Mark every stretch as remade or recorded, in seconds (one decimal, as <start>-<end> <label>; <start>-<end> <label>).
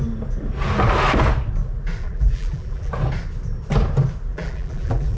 0.0-2.0 recorded; 2.0-2.9 remade; 2.9-4.3 recorded; 4.3-5.2 remade